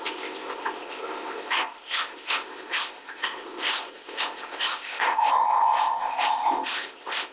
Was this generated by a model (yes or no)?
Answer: yes